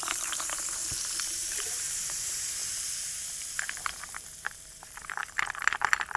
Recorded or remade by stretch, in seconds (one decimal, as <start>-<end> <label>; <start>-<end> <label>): 0.0-0.8 remade; 0.8-1.3 recorded; 1.3-2.6 remade; 2.6-3.7 recorded; 3.7-5.2 remade; 5.2-6.2 recorded